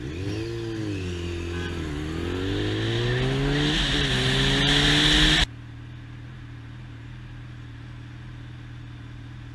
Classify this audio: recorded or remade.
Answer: recorded